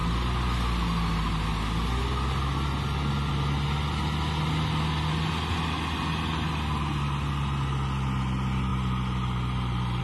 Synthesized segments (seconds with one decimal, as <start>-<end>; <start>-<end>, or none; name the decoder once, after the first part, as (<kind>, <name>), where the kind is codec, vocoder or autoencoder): none